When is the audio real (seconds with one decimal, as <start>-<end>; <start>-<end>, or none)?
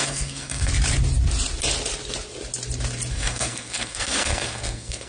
0.7-3.1